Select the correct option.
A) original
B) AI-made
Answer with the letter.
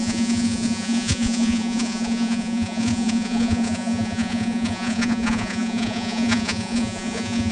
B